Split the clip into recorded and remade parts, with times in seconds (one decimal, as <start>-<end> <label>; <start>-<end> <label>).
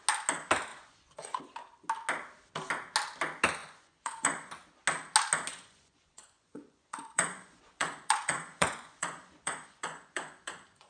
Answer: 0.0-0.7 recorded; 0.7-1.4 remade; 1.4-3.6 recorded; 3.6-4.5 remade; 4.5-5.5 recorded; 5.5-10.9 remade